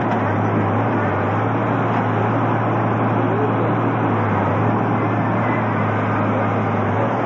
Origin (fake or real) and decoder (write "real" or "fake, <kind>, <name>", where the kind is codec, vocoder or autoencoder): real